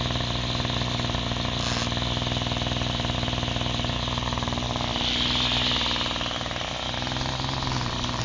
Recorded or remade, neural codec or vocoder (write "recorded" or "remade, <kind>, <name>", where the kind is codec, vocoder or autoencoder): recorded